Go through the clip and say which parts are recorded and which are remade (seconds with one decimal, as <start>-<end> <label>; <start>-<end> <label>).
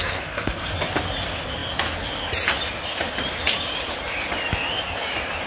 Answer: 0.0-0.7 remade; 0.7-5.5 recorded